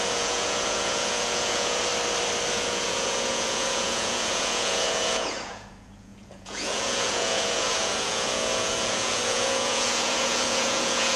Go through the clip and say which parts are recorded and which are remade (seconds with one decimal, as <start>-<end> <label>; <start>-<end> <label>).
0.0-1.9 remade; 1.9-2.5 recorded; 2.5-11.2 remade